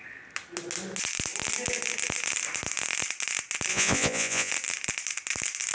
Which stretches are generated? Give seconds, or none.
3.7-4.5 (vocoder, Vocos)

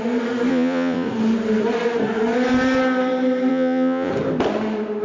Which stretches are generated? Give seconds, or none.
0.5-1.1 (vocoder, Vocos); 3.5-4.1

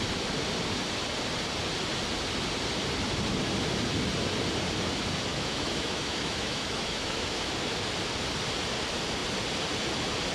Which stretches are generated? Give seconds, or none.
5.3-7.5 (autoencoder, DAC-VAE)

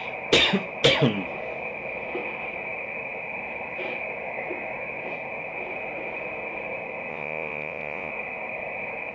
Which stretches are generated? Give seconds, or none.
7.1-8.1 (vocoder, Vocos)

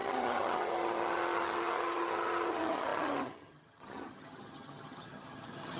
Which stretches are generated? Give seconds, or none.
0.0-5.8 (vocoder, HiFi-GAN)

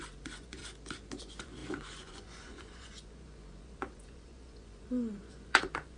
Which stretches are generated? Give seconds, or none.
0.0-0.6 (vocoder, Vocos); 1.2-6.0

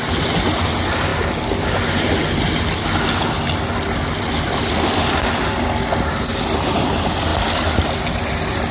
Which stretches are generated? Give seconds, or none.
none